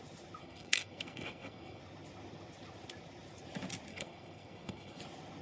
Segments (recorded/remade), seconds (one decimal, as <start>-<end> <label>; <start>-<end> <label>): 0.0-0.4 recorded; 0.4-1.8 remade; 1.8-3.9 recorded; 3.9-5.0 remade; 5.0-5.4 recorded